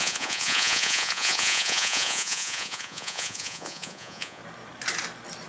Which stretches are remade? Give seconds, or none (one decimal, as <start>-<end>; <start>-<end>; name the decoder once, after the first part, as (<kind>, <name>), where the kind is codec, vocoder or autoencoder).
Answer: 0.0-4.4 (vocoder, Vocos)